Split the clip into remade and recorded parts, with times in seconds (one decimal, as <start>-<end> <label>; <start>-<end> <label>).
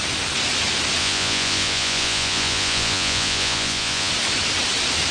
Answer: 0.0-1.0 recorded; 1.0-4.1 remade; 4.1-5.1 recorded